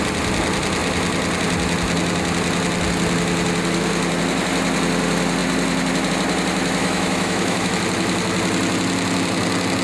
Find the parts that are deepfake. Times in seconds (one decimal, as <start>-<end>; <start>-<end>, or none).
6.8-7.7